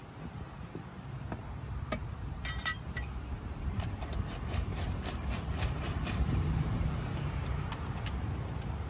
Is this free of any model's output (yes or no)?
no